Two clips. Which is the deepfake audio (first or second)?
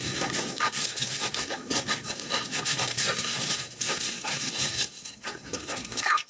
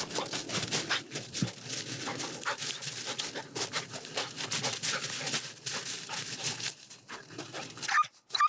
first